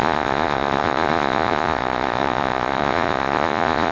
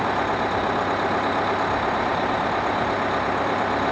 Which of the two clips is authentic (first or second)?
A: second